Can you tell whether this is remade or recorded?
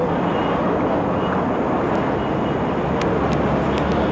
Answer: recorded